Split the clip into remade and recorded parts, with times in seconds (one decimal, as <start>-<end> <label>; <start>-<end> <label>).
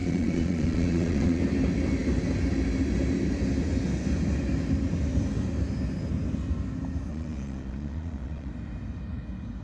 0.0-1.4 remade; 1.4-7.1 recorded; 7.1-8.5 remade; 8.5-9.6 recorded